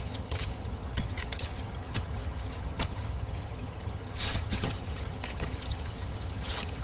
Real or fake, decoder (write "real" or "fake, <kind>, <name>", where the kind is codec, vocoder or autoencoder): fake, vocoder, HiFi-GAN